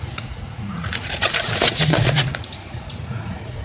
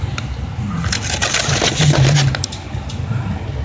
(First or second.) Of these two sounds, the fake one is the first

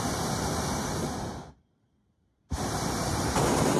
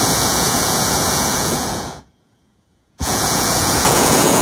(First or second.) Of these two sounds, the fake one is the second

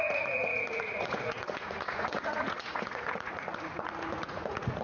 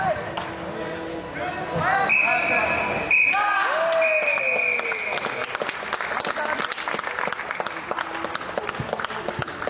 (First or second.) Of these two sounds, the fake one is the first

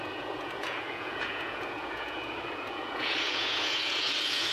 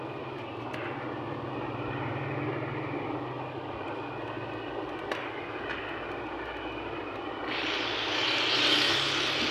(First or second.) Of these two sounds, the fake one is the first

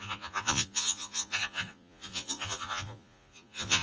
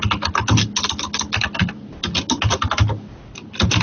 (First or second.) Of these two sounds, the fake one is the first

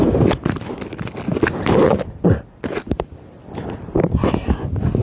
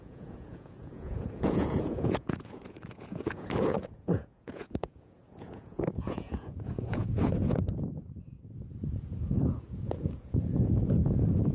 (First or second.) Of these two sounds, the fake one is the second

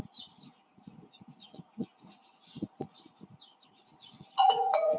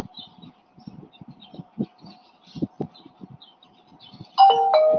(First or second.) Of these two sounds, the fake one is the first